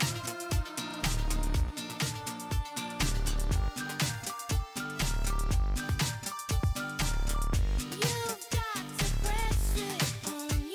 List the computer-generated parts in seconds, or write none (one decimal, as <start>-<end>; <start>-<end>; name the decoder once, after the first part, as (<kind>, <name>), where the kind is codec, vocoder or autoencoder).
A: 9.4-10.7 (autoencoder, DAC-VAE)